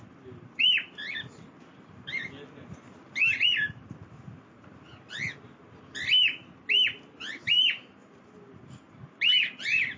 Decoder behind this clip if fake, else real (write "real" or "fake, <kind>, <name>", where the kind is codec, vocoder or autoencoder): real